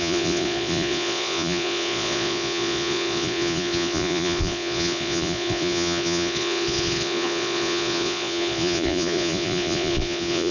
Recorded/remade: remade